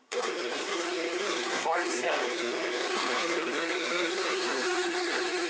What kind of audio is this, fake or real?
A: fake